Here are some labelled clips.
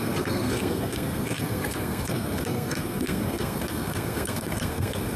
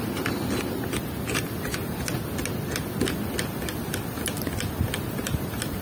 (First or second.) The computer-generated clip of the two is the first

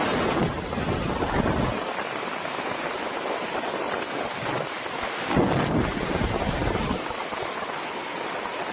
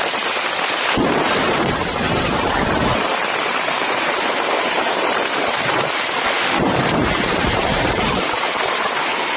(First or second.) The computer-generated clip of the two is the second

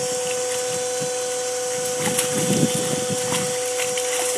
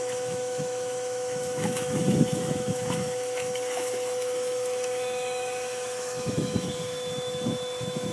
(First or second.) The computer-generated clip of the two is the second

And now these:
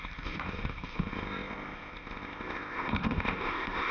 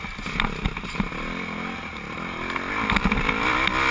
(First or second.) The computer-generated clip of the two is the first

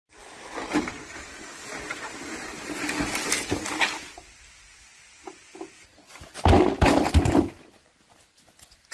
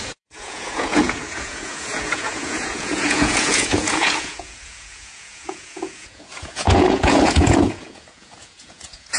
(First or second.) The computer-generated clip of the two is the second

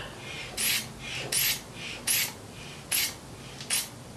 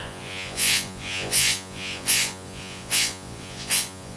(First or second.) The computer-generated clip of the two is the second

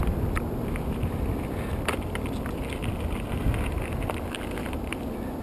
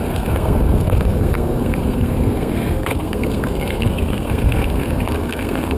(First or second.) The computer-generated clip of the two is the second